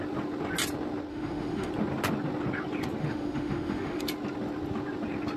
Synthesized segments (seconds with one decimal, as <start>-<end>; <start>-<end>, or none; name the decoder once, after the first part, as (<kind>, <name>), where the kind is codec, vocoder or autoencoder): 1.1-1.7 (autoencoder, DAC-VAE); 3.0-4.0